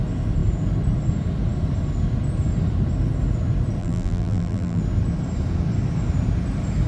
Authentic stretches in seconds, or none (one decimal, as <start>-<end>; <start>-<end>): 0.0-3.8; 4.8-6.9